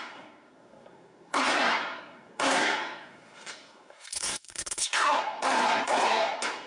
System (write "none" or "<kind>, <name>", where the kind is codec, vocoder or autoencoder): codec, SNAC